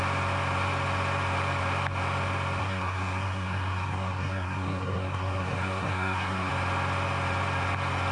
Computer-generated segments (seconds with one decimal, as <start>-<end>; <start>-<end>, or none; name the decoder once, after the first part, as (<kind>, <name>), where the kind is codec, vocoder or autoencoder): 2.6-6.5 (codec, SNAC)